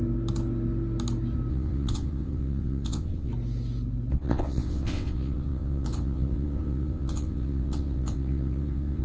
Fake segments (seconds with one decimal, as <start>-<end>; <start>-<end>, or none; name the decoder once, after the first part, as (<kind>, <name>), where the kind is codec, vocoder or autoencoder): 1.5-3.3 (vocoder, WaveNeXt); 4.1-9.0